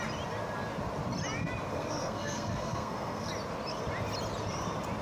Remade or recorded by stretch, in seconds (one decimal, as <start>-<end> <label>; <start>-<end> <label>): 0.0-1.7 recorded; 1.7-3.3 remade; 3.3-5.0 recorded